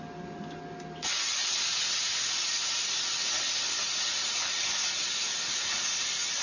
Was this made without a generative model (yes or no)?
yes